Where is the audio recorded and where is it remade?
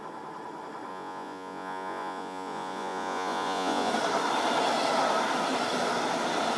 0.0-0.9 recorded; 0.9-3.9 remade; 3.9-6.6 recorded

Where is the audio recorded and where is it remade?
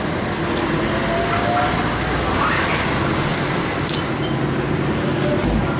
0.0-3.3 recorded; 3.3-4.3 remade; 4.3-5.8 recorded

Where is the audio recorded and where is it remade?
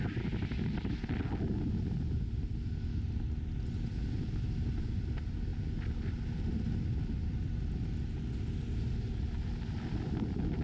0.0-10.6 recorded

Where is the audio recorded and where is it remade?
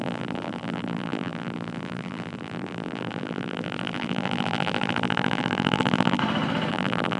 0.0-6.2 remade; 6.2-6.7 recorded; 6.7-7.2 remade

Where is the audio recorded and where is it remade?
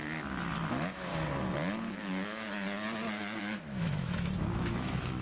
0.0-0.7 recorded; 0.7-1.1 remade; 1.1-3.4 recorded; 3.4-5.2 remade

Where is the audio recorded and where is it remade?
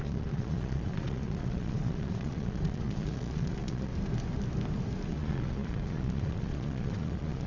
0.0-3.9 remade; 3.9-5.1 recorded; 5.1-7.5 remade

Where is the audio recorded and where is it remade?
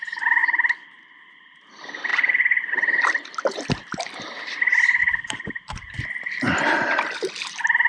0.0-5.0 recorded; 5.0-6.0 remade; 6.0-7.9 recorded